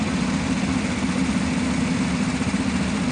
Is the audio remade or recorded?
recorded